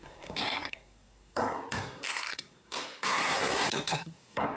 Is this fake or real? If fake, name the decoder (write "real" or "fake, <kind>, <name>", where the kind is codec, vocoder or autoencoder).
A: fake, codec, SNAC